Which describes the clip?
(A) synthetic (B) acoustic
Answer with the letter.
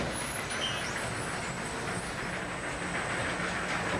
B